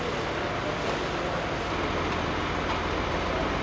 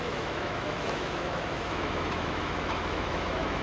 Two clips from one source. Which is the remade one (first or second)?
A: second